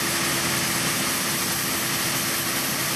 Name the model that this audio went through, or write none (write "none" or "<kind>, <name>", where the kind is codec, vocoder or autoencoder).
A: none